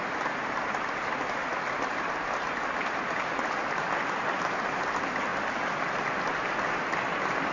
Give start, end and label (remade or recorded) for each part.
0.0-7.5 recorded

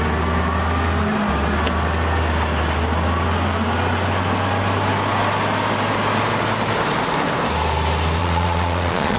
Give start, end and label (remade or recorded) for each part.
0.0-8.2 recorded; 8.2-9.2 remade

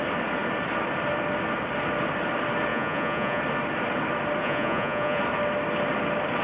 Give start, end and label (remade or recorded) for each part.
0.0-2.7 recorded; 2.7-3.4 remade; 3.4-4.4 recorded; 4.4-5.2 remade; 5.2-6.4 recorded

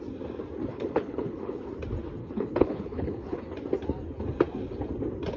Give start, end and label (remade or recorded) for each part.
0.0-0.7 recorded; 0.7-1.7 remade; 1.7-2.2 recorded; 2.2-3.4 remade; 3.4-5.4 recorded

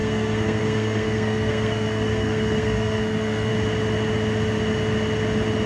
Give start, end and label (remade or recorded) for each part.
0.0-3.5 remade; 3.5-5.7 recorded